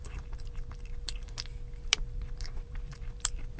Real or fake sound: fake